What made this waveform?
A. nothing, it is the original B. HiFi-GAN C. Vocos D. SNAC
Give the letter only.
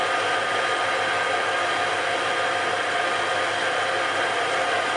A